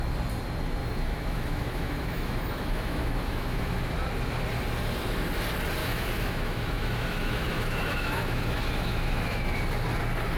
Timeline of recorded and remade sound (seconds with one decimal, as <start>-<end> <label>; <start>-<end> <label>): 0.0-0.8 recorded; 0.8-3.9 remade; 3.9-5.8 recorded; 5.8-9.6 remade; 9.6-10.4 recorded